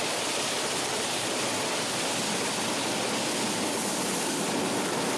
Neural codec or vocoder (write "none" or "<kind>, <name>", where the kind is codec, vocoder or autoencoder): none